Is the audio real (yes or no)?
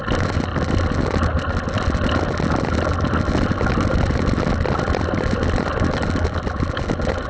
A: yes